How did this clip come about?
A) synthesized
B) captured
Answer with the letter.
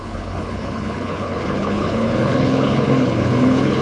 A